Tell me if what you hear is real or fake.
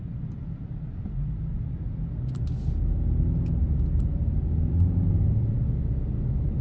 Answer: real